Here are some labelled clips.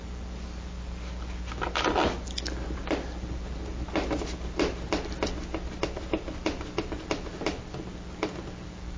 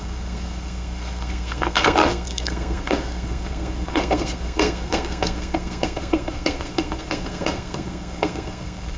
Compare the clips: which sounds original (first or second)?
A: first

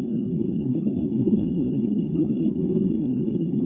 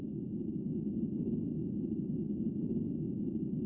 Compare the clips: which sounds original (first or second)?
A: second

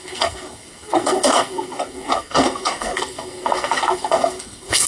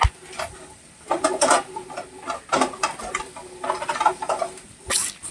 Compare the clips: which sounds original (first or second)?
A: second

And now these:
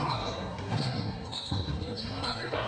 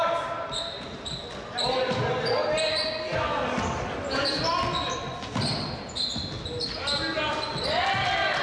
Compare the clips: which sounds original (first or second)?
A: second